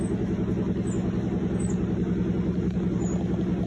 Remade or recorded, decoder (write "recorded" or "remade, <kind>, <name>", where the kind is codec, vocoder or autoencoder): recorded